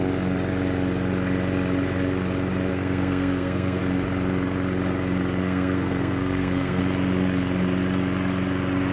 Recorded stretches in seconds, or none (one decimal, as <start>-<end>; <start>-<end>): 0.0-2.7; 3.8-5.4; 6.8-8.9

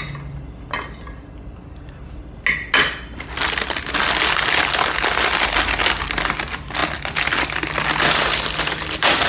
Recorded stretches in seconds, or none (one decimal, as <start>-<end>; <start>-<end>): 0.0-9.3